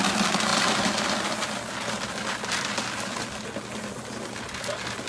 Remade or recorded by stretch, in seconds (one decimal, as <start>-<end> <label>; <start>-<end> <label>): 0.0-5.1 recorded

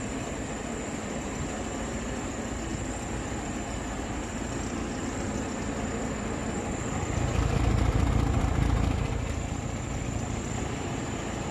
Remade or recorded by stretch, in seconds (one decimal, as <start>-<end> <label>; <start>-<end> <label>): 0.0-11.5 remade

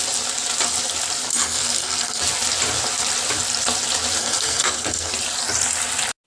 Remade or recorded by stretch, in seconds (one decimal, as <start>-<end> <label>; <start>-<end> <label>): 0.0-1.3 recorded; 1.3-2.2 remade; 2.2-4.2 recorded; 4.2-5.1 remade; 5.1-6.3 recorded

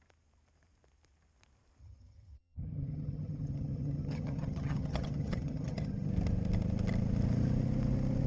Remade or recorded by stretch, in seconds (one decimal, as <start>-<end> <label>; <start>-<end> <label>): 0.0-1.8 recorded; 1.8-6.1 remade; 6.1-8.3 recorded